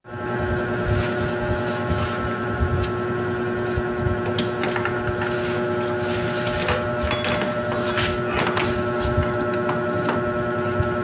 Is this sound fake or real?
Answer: real